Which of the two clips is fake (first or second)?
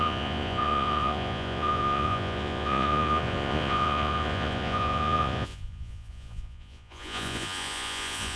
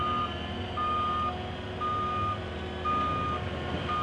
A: first